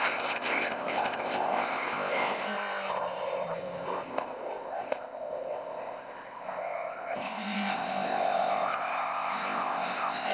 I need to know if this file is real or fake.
fake